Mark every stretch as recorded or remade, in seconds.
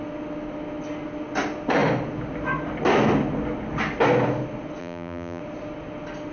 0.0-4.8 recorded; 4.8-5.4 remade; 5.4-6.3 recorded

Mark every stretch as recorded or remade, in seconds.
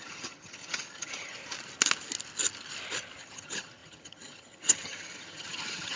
0.0-1.4 remade; 1.4-3.2 recorded; 3.2-6.0 remade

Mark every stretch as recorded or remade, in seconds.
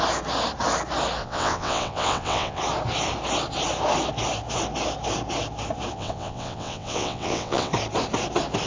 0.0-1.2 recorded; 1.2-2.6 remade; 2.6-5.9 recorded; 5.9-7.7 remade; 7.7-8.7 recorded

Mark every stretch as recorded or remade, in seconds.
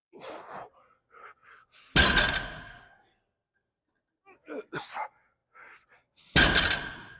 0.0-7.2 recorded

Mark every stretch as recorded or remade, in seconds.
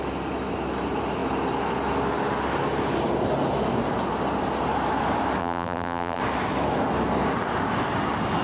0.0-5.4 recorded; 5.4-6.2 remade; 6.2-8.4 recorded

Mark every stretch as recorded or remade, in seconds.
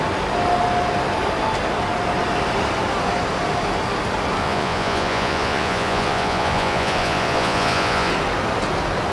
0.0-4.4 recorded; 4.4-8.1 remade; 8.1-9.1 recorded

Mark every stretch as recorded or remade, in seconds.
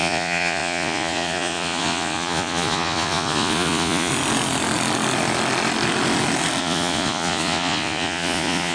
0.0-4.1 remade; 4.1-6.6 recorded; 6.6-8.7 remade